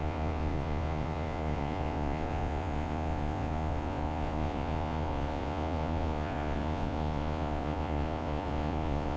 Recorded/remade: remade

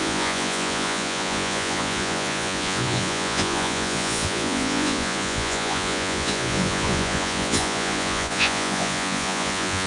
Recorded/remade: remade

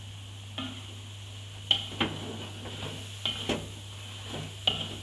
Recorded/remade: recorded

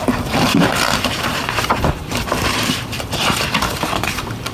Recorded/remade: remade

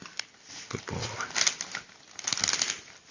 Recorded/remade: recorded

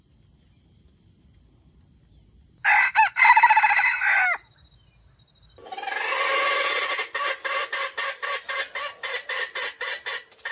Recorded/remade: recorded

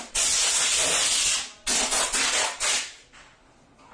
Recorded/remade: recorded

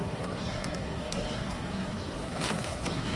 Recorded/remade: remade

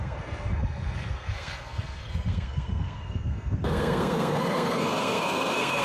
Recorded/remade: remade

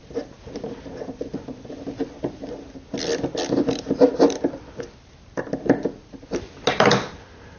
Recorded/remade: recorded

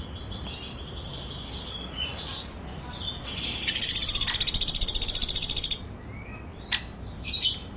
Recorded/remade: recorded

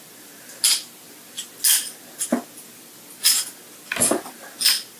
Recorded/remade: recorded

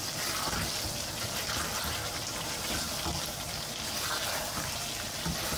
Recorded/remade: recorded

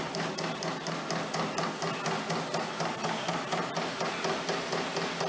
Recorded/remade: recorded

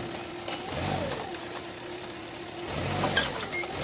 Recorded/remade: recorded